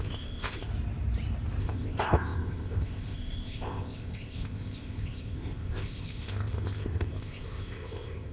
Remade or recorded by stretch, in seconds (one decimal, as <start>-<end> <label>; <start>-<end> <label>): 0.0-0.7 remade; 0.7-1.6 recorded; 1.6-8.3 remade